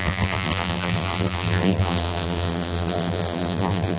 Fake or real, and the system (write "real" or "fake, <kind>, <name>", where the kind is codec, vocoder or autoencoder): fake, vocoder, BigVGAN v2